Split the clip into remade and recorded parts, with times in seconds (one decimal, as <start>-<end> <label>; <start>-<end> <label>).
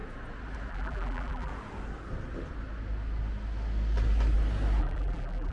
0.0-0.7 recorded; 0.7-1.5 remade; 1.5-4.8 recorded; 4.8-5.5 remade